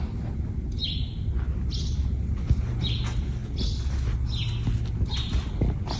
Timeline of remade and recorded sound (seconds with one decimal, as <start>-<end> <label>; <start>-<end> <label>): 0.0-6.0 recorded